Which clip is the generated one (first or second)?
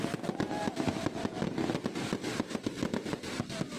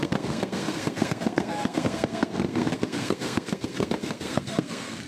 second